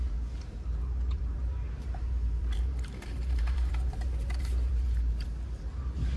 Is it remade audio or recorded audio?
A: remade